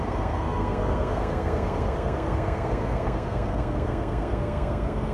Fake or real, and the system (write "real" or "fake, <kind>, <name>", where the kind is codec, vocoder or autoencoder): fake, codec, SNAC